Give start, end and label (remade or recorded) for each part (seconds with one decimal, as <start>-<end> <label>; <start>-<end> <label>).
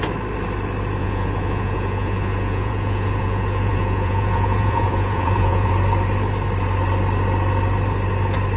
0.0-1.0 recorded; 1.0-5.7 remade; 5.7-8.6 recorded